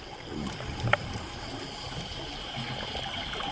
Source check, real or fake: real